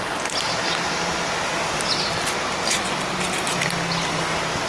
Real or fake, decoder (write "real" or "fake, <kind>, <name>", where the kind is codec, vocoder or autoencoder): real